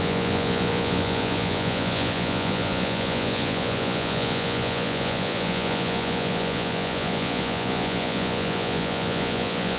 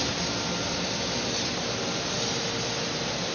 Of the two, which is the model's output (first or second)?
first